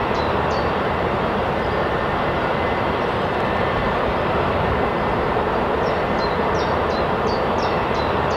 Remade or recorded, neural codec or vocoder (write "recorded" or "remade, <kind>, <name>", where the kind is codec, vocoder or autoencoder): remade, vocoder, BigVGAN v2